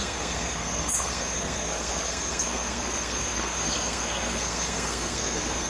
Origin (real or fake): fake